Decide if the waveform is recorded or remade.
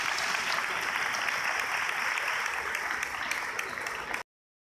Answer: recorded